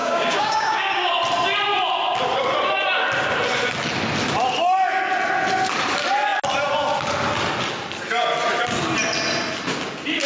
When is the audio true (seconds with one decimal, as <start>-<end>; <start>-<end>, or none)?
1.1-10.3